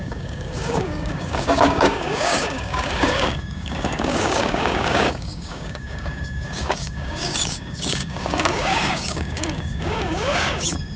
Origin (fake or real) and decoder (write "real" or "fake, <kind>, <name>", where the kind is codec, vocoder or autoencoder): fake, codec, DAC